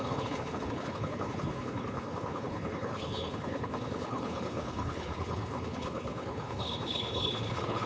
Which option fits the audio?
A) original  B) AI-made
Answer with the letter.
B